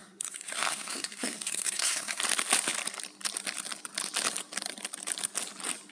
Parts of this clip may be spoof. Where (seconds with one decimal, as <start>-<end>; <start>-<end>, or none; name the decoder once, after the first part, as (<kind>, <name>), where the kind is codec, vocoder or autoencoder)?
0.0-2.2 (codec, SNAC)